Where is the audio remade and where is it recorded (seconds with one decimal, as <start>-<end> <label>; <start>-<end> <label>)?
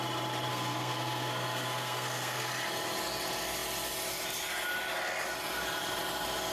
0.0-0.5 recorded; 0.5-2.5 remade; 2.5-6.5 recorded